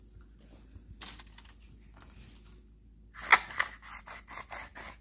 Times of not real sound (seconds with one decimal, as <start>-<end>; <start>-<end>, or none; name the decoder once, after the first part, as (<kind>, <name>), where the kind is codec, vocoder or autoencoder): none

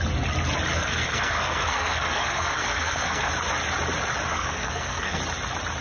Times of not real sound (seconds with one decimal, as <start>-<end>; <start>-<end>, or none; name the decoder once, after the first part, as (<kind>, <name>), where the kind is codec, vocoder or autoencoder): 0.7-3.3 (codec, SNAC); 4.3-5.2

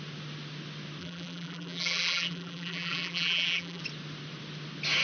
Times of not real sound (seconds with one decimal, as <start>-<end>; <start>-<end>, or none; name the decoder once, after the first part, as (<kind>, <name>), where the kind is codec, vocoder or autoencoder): 1.0-3.8 (vocoder, BigVGAN v2)

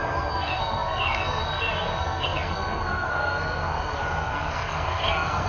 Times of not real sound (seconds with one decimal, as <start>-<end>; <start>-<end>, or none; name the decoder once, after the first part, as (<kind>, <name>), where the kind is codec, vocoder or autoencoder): 0.0-5.5 (codec, SNAC)

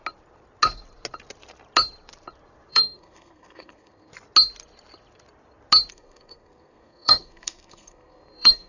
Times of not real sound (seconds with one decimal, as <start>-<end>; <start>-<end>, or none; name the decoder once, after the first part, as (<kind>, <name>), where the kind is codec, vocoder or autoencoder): 2.7-4.1 (codec, SNAC); 5.9-8.7

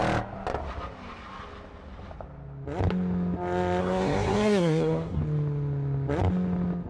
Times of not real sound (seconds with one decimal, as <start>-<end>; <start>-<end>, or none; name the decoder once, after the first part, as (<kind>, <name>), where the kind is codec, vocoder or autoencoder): 3.8-5.2 (codec, SNAC)

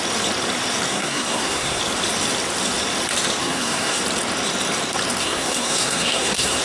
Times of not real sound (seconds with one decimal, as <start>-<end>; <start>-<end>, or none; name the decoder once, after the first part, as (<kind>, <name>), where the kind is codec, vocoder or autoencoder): 0.9-1.8 (codec, SNAC); 3.4-4.0; 5.2-6.6

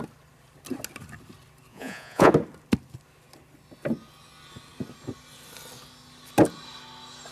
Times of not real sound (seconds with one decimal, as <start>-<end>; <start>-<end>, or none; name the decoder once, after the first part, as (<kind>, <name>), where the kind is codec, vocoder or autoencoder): 1.7-2.3 (vocoder, Vocos)